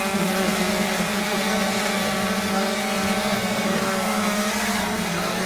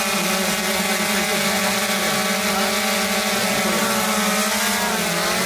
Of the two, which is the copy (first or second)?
first